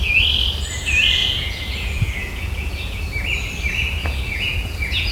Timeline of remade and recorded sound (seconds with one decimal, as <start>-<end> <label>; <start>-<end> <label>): 0.0-1.2 recorded; 1.2-3.0 remade; 3.0-4.0 recorded; 4.0-5.1 remade